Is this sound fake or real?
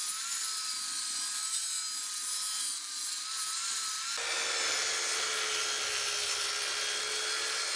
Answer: real